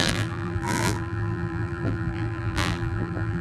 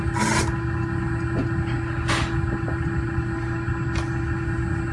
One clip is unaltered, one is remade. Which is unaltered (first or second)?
second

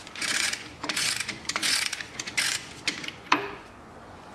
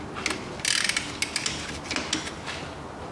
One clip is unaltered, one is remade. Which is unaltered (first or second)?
second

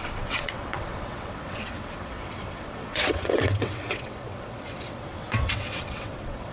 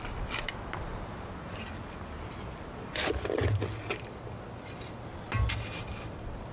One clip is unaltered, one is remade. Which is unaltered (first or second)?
second